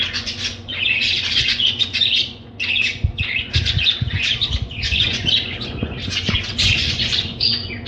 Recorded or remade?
remade